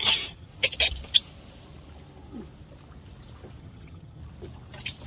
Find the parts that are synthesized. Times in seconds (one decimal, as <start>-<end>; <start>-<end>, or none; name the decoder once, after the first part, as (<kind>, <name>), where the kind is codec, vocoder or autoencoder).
0.0-0.5 (vocoder, HiFi-GAN); 3.6-4.2